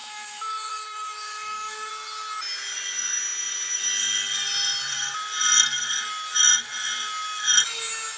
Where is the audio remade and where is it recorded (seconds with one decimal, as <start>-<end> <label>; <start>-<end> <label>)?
0.0-1.9 remade; 1.9-8.2 recorded